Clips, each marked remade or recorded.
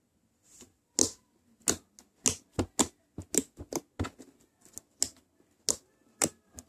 recorded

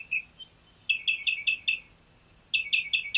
recorded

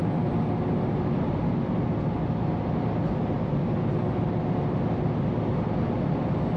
recorded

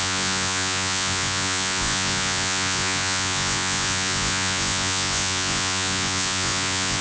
remade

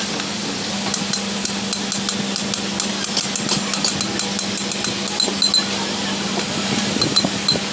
recorded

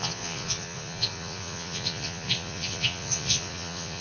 remade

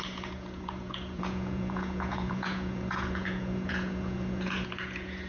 remade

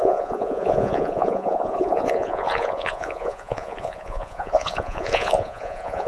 remade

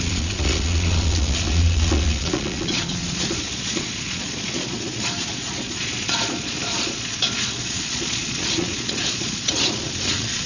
remade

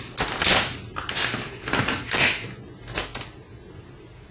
recorded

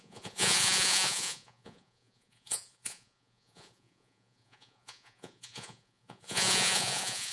remade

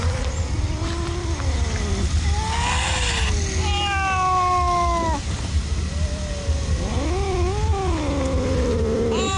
recorded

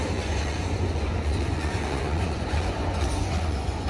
remade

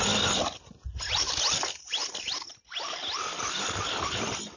recorded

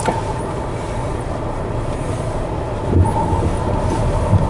recorded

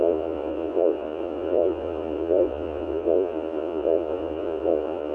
remade